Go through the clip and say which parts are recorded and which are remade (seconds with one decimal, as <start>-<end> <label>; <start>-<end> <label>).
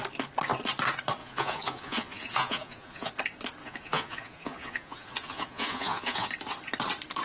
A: 0.0-1.2 recorded; 1.2-3.1 remade; 3.1-3.6 recorded; 3.6-6.3 remade; 6.3-7.2 recorded